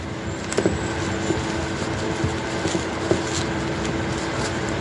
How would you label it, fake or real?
real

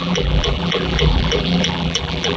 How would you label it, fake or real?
fake